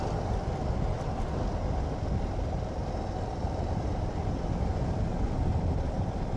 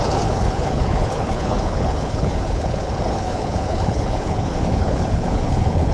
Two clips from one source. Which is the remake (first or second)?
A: second